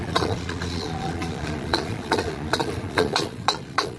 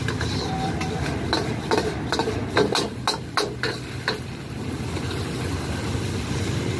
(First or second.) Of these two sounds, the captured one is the second